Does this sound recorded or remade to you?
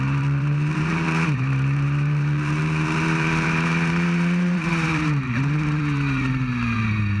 remade